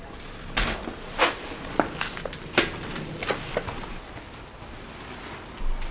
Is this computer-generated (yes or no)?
no